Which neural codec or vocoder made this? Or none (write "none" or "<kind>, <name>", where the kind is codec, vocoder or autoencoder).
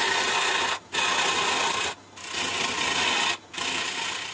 none